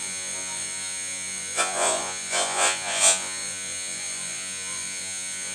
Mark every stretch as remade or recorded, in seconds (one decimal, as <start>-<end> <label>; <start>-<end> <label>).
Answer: 0.0-5.5 remade